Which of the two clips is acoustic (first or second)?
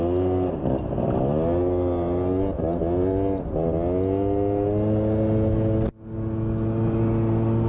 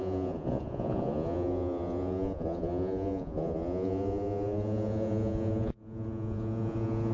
first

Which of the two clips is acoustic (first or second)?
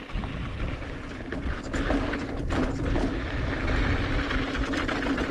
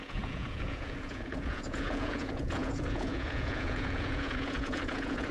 first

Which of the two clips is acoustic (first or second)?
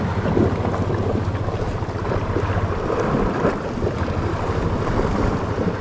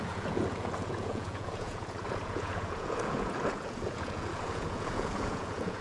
first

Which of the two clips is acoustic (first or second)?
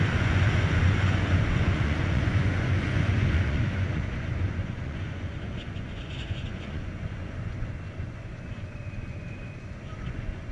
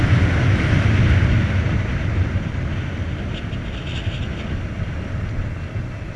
second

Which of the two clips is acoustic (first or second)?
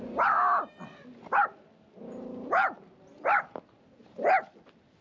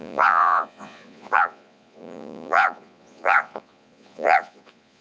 first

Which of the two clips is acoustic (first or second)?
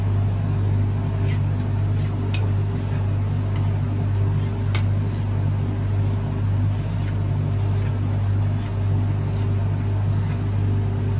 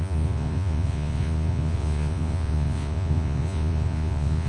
first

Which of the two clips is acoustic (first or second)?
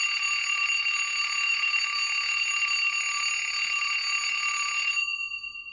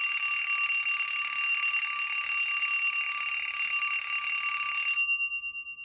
second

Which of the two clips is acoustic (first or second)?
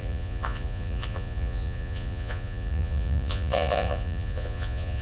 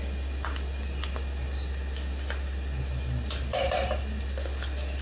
second